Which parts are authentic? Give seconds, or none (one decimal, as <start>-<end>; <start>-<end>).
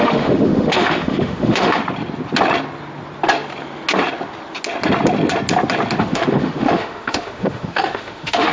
1.8-6.0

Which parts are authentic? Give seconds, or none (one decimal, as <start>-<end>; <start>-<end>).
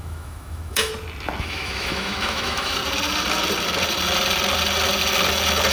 0.9-1.4; 2.8-5.7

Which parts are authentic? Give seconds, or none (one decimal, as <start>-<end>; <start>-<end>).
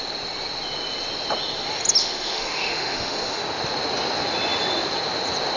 0.0-2.0; 3.4-5.6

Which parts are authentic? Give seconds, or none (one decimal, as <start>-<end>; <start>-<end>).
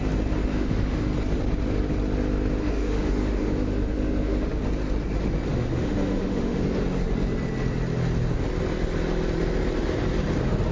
0.0-0.5; 1.1-2.6; 4.6-5.5; 6.6-10.7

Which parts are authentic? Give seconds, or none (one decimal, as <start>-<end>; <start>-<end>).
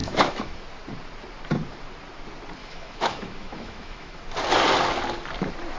0.6-2.6; 4.2-5.8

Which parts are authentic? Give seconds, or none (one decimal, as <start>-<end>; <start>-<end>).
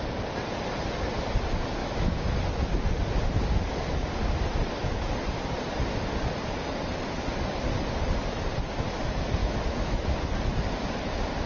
0.0-1.8; 2.4-9.4; 10.3-11.5